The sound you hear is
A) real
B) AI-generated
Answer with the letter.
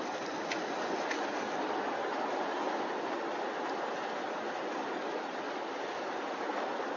A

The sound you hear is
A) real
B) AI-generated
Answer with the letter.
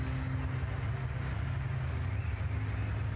A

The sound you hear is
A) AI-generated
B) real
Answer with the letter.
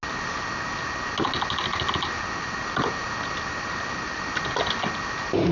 B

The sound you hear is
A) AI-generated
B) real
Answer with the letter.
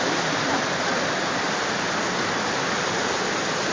B